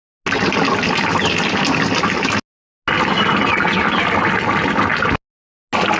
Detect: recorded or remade recorded